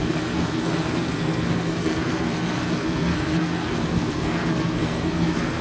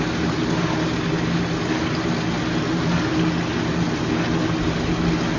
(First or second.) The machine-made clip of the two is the first